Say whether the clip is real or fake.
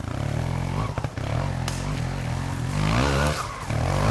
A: real